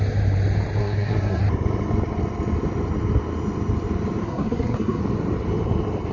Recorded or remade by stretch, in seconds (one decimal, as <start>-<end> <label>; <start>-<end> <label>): 0.0-0.8 recorded; 0.8-1.4 remade; 1.4-4.2 recorded; 4.2-5.0 remade; 5.0-6.1 recorded